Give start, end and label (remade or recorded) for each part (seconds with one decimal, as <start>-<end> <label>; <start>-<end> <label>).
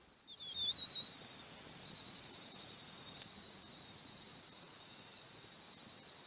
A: 0.0-2.0 recorded; 2.0-5.4 remade; 5.4-6.3 recorded